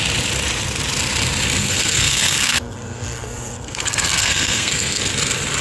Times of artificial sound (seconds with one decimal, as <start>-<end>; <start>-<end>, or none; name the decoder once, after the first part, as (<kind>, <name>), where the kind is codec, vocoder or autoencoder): 1.6-5.0 (codec, SNAC)